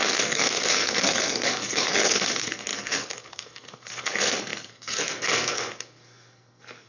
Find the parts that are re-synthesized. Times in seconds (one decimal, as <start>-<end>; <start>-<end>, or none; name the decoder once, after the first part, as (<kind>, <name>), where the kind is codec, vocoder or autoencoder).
0.0-6.9 (codec, SNAC)

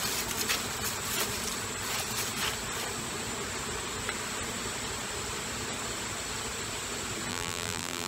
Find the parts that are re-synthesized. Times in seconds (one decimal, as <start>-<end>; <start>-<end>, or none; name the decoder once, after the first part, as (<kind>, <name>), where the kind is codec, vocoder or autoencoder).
7.3-8.1 (vocoder, BigVGAN v2)

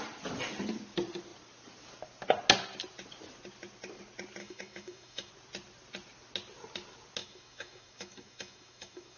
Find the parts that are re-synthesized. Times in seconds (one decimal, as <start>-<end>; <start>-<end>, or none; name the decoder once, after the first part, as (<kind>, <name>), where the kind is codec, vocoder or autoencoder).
4.4-5.3 (autoencoder, DAC-VAE); 7.2-9.2

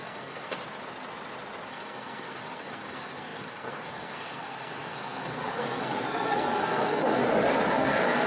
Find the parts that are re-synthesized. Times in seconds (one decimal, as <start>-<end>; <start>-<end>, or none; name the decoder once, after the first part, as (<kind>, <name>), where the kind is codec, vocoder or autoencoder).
0.0-0.6 (codec, SNAC); 1.7-7.2; 7.7-8.3

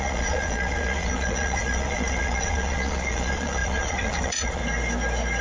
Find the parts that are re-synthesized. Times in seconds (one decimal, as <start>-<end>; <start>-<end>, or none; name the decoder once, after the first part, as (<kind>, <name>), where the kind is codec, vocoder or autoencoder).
0.0-4.6 (vocoder, Vocos)

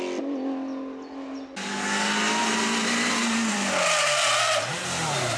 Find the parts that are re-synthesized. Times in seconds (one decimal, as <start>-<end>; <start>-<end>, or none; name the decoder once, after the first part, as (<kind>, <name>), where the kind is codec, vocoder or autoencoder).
2.4-3.5 (vocoder, BigVGAN v2)

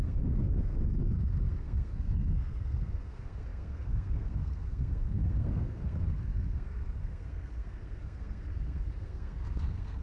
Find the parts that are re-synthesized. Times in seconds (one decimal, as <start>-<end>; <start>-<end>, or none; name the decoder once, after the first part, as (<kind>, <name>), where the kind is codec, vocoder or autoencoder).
0.0-10.0 (codec, SNAC)

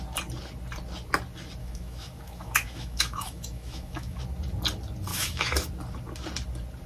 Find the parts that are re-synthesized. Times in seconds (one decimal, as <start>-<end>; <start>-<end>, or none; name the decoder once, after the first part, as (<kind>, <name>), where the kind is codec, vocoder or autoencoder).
1.6-4.2 (autoencoder, DAC-VAE); 5.1-5.7